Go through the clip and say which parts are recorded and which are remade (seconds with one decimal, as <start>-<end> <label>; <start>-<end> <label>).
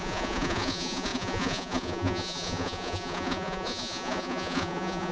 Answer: 0.0-5.1 remade